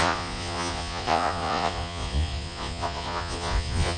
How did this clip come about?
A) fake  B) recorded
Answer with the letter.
A